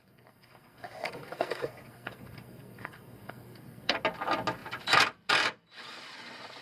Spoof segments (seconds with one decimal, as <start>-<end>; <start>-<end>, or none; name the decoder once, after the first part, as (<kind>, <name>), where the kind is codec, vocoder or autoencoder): 0.0-4.0 (codec, SNAC)